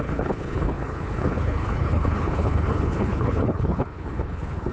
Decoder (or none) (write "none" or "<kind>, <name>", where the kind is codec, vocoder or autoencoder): codec, HILCodec